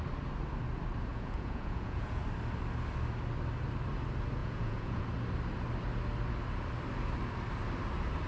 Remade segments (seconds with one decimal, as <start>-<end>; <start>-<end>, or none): 1.1-2.2; 4.4-5.0